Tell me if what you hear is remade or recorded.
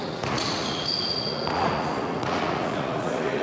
remade